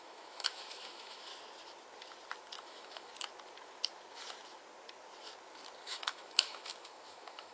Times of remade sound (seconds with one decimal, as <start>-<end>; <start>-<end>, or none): 0.0-1.3; 2.6-3.1; 5.8-7.5